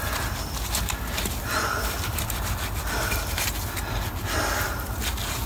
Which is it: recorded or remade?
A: recorded